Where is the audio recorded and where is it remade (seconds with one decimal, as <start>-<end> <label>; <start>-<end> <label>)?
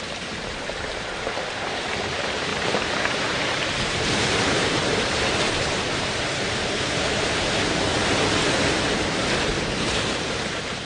0.0-7.9 remade; 7.9-9.8 recorded; 9.8-10.9 remade